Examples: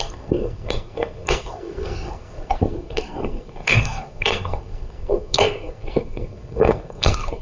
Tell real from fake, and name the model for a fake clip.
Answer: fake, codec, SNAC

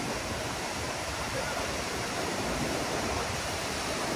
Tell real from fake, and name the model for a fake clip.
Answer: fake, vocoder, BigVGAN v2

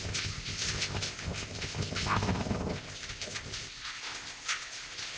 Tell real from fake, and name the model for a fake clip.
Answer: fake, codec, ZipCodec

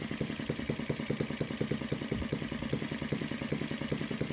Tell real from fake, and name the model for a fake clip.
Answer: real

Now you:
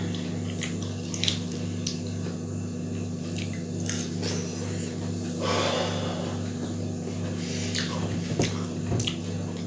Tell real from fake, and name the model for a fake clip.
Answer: real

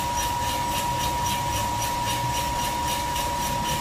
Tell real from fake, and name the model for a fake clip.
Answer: real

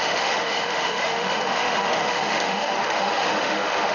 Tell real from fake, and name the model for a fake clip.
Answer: fake, autoencoder, DAC-VAE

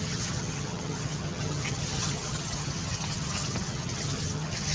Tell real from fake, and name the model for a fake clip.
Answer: fake, vocoder, HiFi-GAN